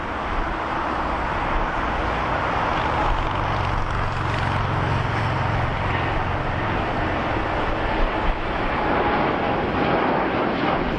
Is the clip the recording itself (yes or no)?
yes